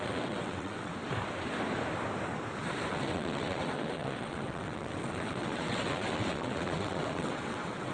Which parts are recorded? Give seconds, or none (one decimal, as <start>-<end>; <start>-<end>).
0.9-2.9